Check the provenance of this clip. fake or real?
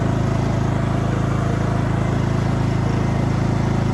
real